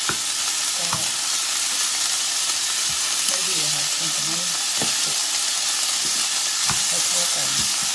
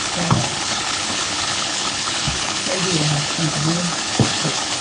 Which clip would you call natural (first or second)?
first